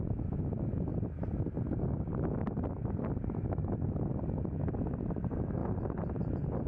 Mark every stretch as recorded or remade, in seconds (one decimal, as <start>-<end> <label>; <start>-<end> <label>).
0.0-6.7 recorded